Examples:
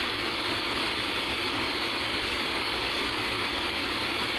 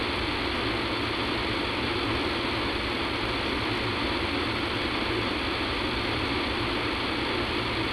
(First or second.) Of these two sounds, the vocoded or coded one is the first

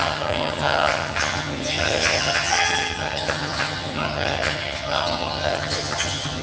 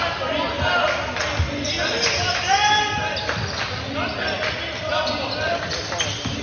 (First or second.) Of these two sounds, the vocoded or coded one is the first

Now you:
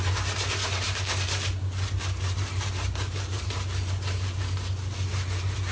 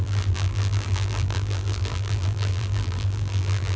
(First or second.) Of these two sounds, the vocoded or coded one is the second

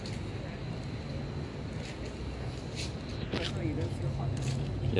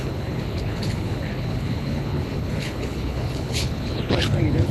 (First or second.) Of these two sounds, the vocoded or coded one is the second